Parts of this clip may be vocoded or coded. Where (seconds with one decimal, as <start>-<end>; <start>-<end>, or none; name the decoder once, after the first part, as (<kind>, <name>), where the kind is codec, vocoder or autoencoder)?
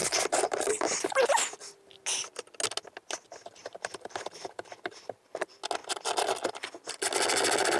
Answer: 0.0-1.5 (vocoder, BigVGAN v2)